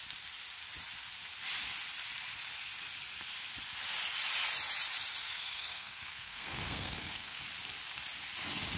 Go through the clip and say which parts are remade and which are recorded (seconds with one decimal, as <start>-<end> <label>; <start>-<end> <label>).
0.0-5.2 recorded; 5.2-7.4 remade; 7.4-8.8 recorded